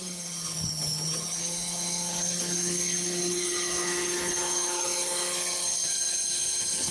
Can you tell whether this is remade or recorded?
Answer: remade